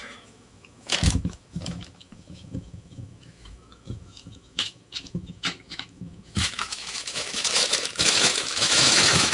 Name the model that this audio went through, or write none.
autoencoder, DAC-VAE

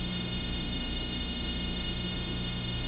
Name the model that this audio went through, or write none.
autoencoder, DAC-VAE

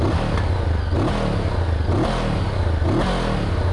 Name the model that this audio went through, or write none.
none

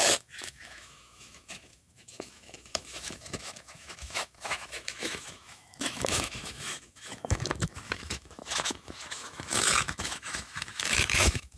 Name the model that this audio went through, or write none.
autoencoder, DAC-VAE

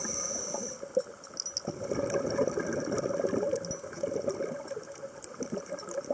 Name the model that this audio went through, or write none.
none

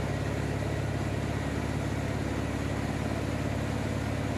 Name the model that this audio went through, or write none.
none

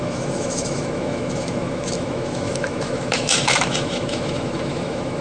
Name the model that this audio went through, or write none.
autoencoder, DAC-VAE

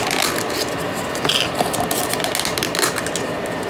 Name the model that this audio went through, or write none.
none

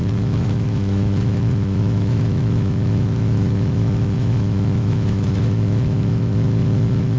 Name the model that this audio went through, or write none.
autoencoder, DAC-VAE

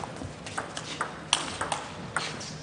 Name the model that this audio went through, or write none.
none